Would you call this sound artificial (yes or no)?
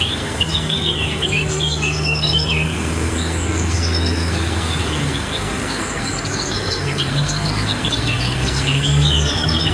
yes